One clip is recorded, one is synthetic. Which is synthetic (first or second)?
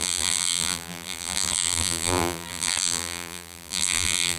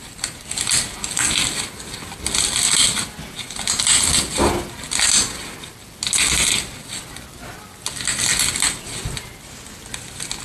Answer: first